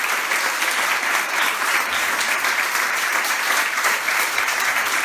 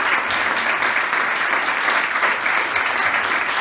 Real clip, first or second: second